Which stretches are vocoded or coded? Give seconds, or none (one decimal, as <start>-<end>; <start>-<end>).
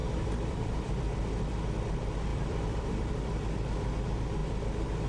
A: 0.0-0.9; 2.3-3.1